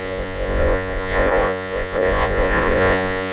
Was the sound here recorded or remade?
remade